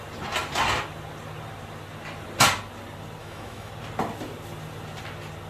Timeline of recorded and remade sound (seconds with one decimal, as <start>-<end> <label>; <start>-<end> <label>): 0.0-3.2 recorded; 3.2-3.7 remade; 3.7-5.5 recorded